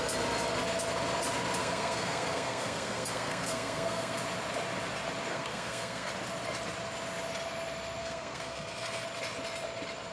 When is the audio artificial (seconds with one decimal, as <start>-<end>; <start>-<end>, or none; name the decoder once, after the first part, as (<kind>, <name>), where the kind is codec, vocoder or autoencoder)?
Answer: 1.6-4.2 (codec, SNAC); 5.3-6.1; 8.0-9.0